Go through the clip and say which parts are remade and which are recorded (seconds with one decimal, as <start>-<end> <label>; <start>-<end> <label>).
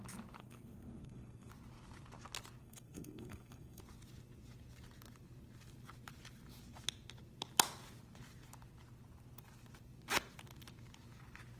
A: 0.0-0.4 recorded; 0.4-1.5 remade; 1.5-2.6 recorded; 2.6-3.8 remade; 3.8-11.6 recorded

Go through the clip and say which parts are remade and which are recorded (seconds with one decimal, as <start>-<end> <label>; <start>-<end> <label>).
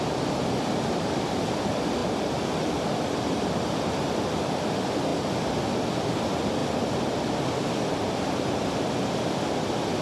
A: 0.0-10.0 recorded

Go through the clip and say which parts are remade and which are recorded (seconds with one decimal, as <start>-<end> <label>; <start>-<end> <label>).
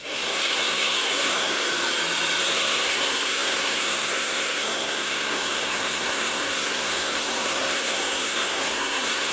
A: 0.0-1.7 remade; 1.7-2.4 recorded; 2.4-9.3 remade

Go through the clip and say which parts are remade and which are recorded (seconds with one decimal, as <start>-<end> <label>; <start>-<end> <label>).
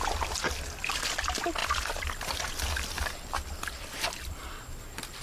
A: 0.0-5.2 recorded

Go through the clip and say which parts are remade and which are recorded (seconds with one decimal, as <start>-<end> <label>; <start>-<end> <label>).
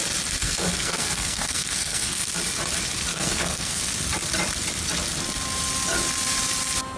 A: 0.0-0.4 recorded; 0.4-2.3 remade; 2.3-3.1 recorded; 3.1-3.8 remade; 3.8-7.0 recorded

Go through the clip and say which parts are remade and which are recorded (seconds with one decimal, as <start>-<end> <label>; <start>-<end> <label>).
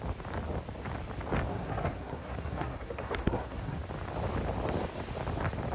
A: 0.0-1.5 recorded; 1.5-3.8 remade; 3.8-5.7 recorded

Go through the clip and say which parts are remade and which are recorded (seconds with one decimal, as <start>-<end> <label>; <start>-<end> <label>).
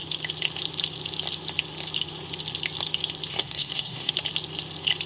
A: 0.0-3.3 recorded; 3.3-4.1 remade; 4.1-5.1 recorded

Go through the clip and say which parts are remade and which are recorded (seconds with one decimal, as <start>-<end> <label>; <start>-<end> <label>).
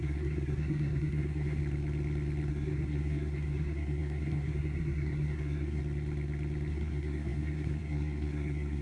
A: 0.0-1.6 remade; 1.6-2.5 recorded; 2.5-5.8 remade; 5.8-6.7 recorded; 6.7-8.8 remade